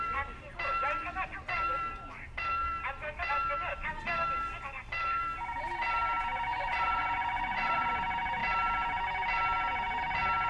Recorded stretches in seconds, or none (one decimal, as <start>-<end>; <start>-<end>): 0.0-6.5; 7.9-10.5